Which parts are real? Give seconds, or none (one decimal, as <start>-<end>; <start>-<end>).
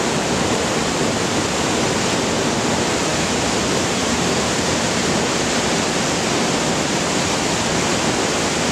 0.0-8.7